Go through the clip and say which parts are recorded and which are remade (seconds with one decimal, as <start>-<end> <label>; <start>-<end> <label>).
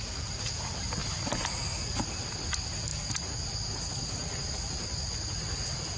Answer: 0.0-6.0 recorded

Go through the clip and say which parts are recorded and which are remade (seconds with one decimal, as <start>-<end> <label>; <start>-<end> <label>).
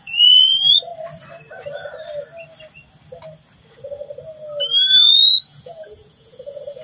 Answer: 0.0-0.9 remade; 0.9-5.0 recorded; 5.0-6.8 remade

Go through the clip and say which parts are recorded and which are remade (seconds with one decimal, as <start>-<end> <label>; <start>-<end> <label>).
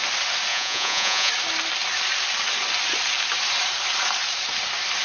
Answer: 0.0-0.5 recorded; 0.5-1.3 remade; 1.3-5.0 recorded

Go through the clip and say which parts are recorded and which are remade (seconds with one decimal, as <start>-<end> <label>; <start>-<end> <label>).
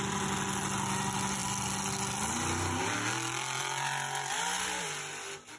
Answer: 0.0-5.6 recorded